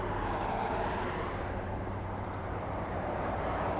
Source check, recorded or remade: remade